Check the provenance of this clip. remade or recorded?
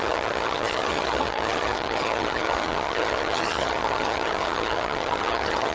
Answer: remade